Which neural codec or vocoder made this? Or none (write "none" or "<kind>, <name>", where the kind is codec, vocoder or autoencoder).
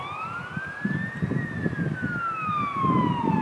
none